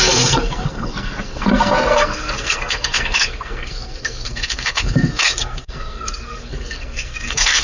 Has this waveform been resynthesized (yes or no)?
yes